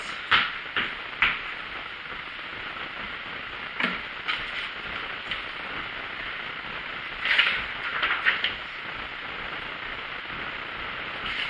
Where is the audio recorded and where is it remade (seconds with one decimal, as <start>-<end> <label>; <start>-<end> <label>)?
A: 0.0-11.5 recorded